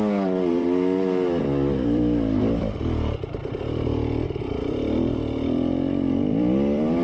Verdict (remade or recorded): remade